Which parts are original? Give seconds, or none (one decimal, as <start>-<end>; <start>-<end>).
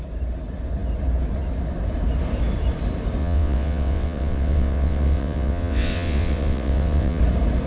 0.0-3.2; 7.2-7.7